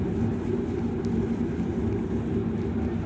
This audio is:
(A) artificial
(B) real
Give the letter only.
B